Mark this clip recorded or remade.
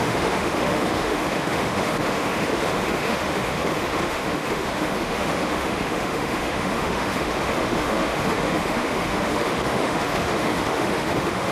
remade